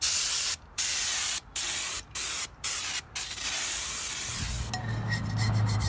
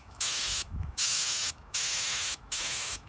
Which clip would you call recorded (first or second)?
first